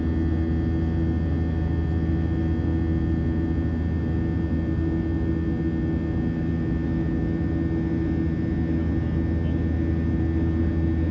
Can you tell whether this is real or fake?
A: real